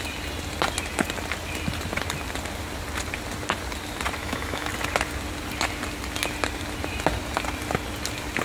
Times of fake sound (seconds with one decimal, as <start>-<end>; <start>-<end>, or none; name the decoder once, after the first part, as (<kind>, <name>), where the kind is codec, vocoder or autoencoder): 4.2-4.7 (autoencoder, DAC-VAE)